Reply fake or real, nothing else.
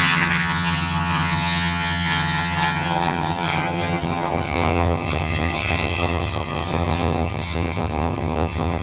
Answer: fake